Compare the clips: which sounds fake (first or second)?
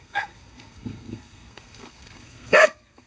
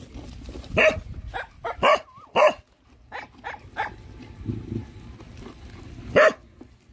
first